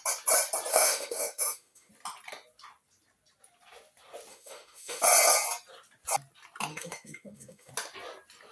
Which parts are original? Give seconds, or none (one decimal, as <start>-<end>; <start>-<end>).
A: 0.0-0.7; 1.9-4.3; 5.0-6.7; 7.7-8.5